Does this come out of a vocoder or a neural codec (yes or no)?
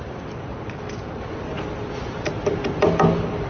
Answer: no